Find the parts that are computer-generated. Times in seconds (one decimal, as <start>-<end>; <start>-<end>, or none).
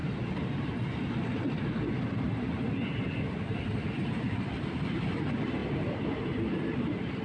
0.0-7.2